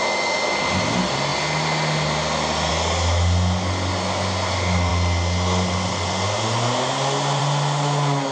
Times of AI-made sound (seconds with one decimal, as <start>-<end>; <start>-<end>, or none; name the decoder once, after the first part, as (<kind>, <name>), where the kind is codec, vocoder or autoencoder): none